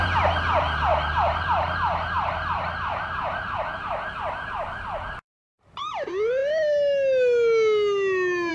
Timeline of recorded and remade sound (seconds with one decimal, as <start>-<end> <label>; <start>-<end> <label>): 0.0-0.9 recorded; 0.9-5.8 remade; 5.8-8.5 recorded